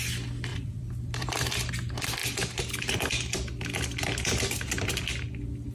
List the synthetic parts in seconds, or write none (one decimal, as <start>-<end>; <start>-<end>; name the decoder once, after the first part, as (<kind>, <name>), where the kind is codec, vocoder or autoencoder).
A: 0.5-1.7 (vocoder, BigVGAN v2)